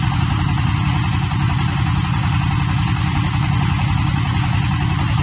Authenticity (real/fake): real